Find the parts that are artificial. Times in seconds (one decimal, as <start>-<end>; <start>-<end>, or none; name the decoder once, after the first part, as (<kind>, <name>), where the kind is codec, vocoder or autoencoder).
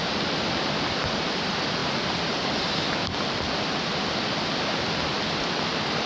none